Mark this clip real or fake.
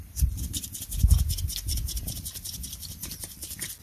real